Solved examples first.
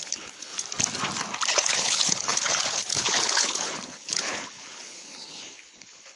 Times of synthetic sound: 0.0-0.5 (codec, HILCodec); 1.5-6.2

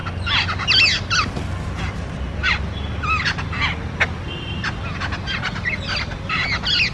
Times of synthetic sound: none

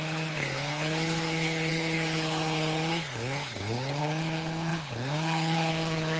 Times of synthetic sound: 0.0-6.2 (codec, HILCodec)

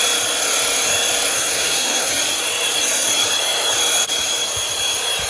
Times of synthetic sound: 1.3-2.1 (codec, SNAC)

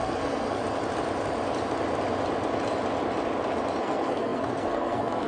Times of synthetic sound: 0.0-0.6 (codec, SNAC); 3.8-5.3

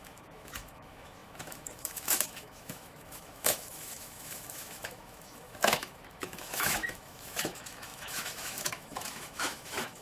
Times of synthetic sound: 0.0-10.0 (autoencoder, DAC-VAE)